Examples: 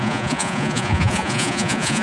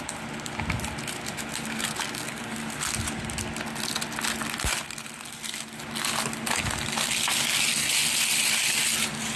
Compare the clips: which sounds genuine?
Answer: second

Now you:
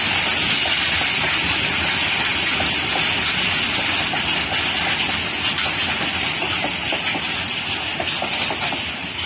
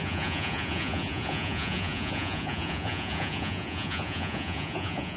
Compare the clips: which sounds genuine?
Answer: first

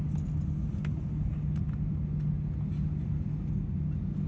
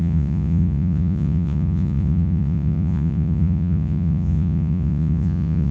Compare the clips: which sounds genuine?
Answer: first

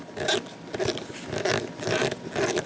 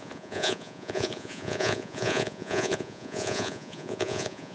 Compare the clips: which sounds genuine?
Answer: first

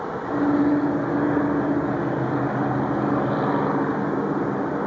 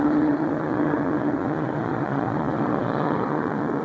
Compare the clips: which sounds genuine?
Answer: first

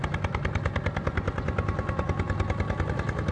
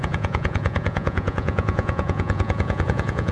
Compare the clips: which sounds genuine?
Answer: first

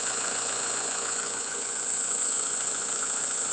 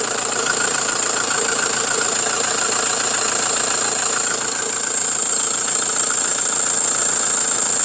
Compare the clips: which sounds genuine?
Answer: second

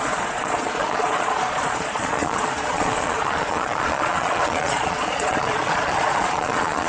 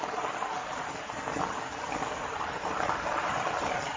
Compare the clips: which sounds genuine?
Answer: second